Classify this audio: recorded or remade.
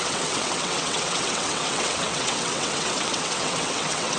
remade